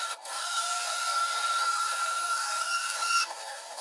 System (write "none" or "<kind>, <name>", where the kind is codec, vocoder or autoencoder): codec, DAC